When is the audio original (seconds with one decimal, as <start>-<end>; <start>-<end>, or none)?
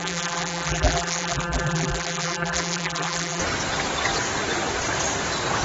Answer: 3.4-5.6